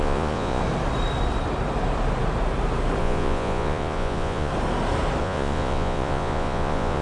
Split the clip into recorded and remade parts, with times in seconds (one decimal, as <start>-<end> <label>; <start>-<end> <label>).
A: 0.0-0.6 remade; 0.6-3.0 recorded; 3.0-4.5 remade; 4.5-5.2 recorded; 5.2-7.0 remade